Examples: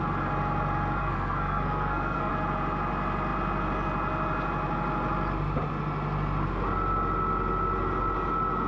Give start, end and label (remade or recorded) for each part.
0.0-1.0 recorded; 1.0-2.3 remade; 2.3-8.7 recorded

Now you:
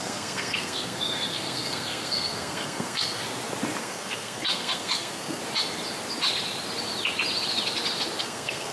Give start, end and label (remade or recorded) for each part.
0.0-3.2 remade; 3.2-3.8 recorded; 3.8-5.4 remade; 5.4-8.2 recorded; 8.2-8.7 remade

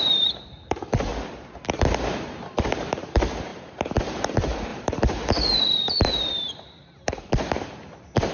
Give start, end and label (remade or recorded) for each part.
0.0-1.1 remade; 1.1-1.7 recorded; 1.7-8.3 remade

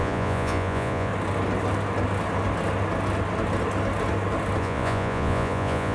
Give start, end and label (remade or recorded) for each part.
0.0-1.1 remade; 1.1-4.6 recorded; 4.6-5.9 remade

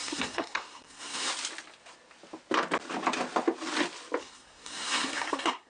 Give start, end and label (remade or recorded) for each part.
0.0-1.3 remade; 1.3-4.2 recorded; 4.2-5.7 remade

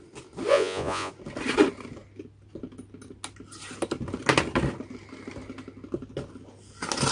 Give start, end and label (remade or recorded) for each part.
0.0-0.5 recorded; 0.5-1.1 remade; 1.1-7.1 recorded

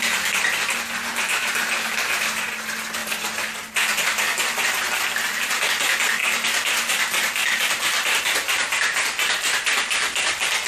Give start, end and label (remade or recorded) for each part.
0.0-3.0 recorded; 3.0-3.7 remade; 3.7-6.2 recorded; 6.2-8.2 remade; 8.2-10.7 recorded